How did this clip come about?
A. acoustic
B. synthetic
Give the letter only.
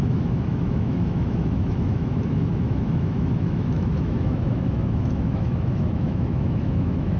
B